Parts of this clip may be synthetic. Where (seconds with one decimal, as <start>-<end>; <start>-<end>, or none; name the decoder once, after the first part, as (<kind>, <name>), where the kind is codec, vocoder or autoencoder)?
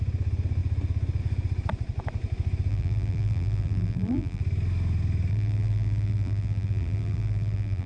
2.7-4.4 (vocoder, BigVGAN v2); 5.3-7.9